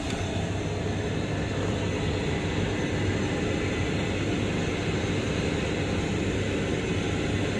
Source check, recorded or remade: recorded